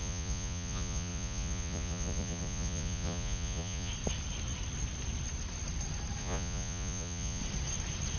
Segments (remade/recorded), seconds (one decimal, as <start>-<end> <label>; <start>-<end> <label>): 0.0-3.9 remade; 3.9-6.2 recorded; 6.2-7.4 remade; 7.4-8.2 recorded